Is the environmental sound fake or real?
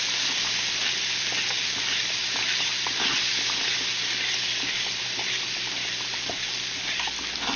real